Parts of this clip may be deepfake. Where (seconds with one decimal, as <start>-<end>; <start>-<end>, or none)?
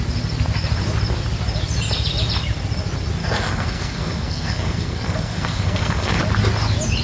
3.2-6.2